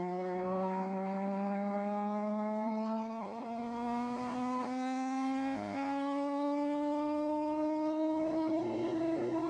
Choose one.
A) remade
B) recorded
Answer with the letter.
A